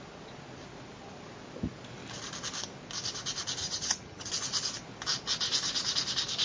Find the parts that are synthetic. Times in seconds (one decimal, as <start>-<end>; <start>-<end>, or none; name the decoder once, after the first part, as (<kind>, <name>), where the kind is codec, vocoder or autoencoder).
3.6-4.3 (vocoder, HiFi-GAN)